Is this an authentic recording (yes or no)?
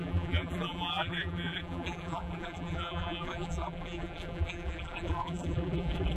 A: no